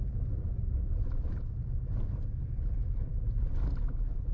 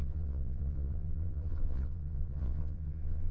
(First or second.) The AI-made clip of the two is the second